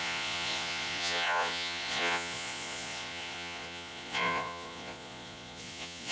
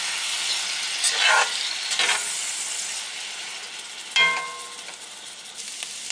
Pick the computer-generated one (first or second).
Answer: first